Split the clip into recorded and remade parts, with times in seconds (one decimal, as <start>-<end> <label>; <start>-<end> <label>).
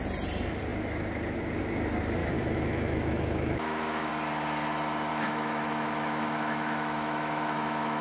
0.0-2.2 recorded; 2.2-4.1 remade; 4.1-5.1 recorded; 5.1-8.0 remade